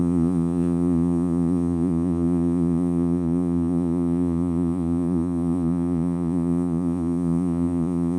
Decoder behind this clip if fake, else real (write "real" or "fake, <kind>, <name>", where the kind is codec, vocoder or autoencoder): fake, vocoder, Vocos